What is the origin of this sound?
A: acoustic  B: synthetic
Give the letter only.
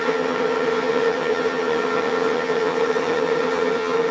B